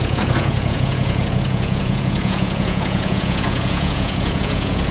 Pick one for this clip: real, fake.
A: fake